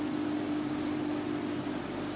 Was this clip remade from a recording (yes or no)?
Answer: no